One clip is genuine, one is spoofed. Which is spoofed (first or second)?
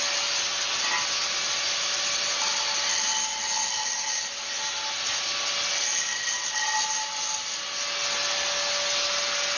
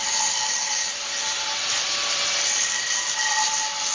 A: second